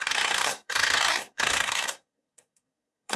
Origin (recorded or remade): remade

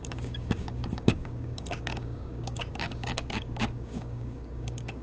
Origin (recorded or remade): remade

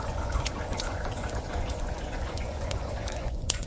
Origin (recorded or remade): remade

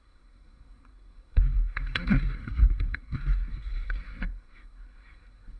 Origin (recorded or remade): remade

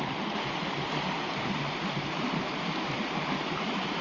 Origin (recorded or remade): recorded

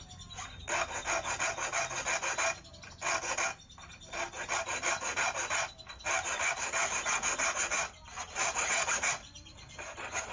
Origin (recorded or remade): recorded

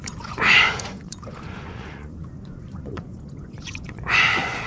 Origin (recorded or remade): remade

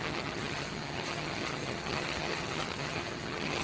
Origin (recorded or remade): remade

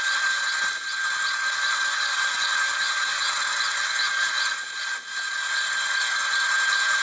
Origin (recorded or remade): recorded